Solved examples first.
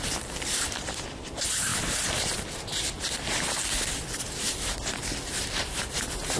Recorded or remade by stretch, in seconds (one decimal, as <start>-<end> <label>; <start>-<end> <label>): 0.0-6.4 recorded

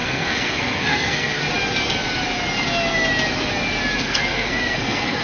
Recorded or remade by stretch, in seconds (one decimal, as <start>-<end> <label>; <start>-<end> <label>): 0.0-1.4 remade; 1.4-4.0 recorded; 4.0-5.2 remade

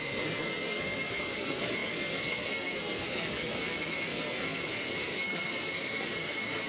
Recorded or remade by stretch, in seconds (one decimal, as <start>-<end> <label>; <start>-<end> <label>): 0.0-6.7 remade